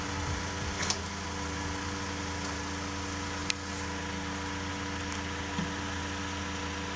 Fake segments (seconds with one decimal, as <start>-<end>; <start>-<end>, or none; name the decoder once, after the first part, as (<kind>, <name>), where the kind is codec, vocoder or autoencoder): none